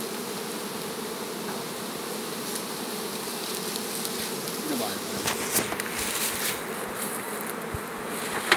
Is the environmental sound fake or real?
real